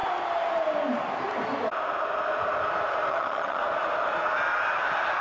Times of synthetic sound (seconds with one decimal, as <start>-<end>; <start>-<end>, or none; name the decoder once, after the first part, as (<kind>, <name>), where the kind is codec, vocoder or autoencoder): 3.1-3.6 (vocoder, HiFi-GAN)